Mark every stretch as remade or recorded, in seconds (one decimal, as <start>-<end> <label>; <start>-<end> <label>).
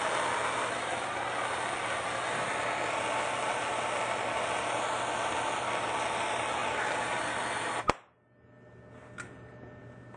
0.0-10.2 recorded